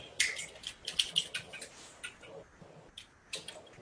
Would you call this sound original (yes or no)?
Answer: yes